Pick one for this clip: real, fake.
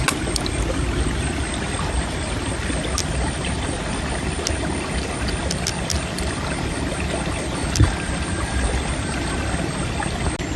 real